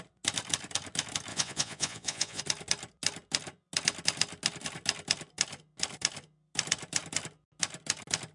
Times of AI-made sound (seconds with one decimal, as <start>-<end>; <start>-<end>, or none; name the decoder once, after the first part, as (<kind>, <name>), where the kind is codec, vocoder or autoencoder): 1.3-2.4 (vocoder, Vocos)